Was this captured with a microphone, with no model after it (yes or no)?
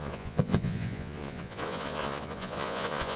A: no